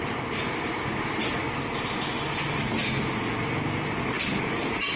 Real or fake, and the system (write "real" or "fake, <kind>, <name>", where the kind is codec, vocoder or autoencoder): real